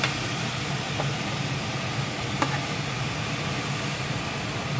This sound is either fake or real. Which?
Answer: real